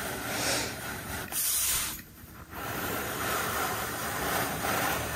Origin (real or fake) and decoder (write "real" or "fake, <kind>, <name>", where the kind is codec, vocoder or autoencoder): fake, vocoder, BigVGAN v2